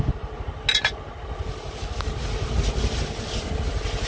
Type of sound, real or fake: real